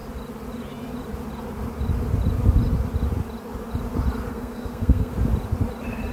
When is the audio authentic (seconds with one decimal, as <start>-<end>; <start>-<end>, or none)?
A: 0.0-4.3; 5.1-6.1